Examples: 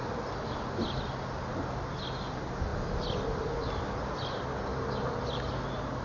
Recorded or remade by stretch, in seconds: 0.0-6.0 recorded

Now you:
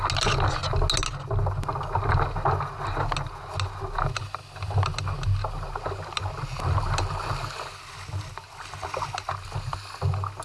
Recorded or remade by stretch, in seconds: 0.0-10.4 recorded

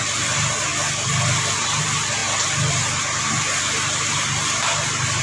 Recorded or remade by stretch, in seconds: 0.0-2.2 remade; 2.2-2.7 recorded; 2.7-5.2 remade